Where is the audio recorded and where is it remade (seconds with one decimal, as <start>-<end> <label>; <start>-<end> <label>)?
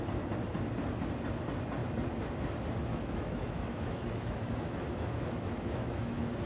0.0-2.9 recorded; 2.9-6.5 remade